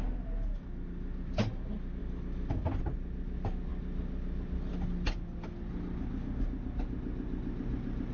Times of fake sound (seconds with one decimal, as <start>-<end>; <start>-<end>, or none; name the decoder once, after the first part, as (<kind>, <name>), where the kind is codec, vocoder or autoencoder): none